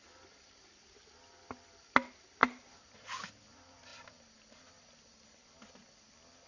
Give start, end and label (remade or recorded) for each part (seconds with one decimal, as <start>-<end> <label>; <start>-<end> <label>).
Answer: 0.0-6.5 recorded